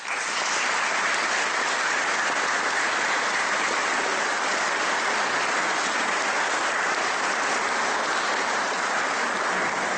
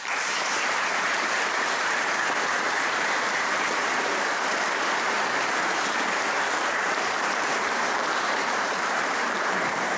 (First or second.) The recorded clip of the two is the first